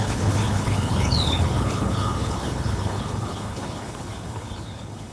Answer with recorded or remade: remade